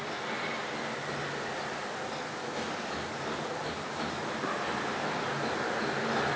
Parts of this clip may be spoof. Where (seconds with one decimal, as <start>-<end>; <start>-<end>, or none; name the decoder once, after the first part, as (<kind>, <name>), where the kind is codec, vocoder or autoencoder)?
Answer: none